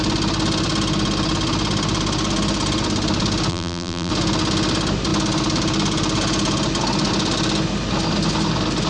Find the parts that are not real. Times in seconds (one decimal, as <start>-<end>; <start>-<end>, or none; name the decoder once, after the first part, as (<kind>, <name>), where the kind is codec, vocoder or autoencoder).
3.5-4.1 (vocoder, BigVGAN v2)